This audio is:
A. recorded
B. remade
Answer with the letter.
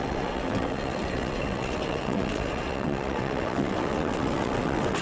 B